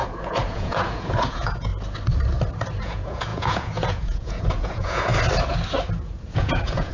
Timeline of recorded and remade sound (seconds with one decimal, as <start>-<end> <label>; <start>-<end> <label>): 0.0-1.7 remade; 1.7-2.8 recorded; 2.8-5.1 remade; 5.1-6.2 recorded; 6.2-6.9 remade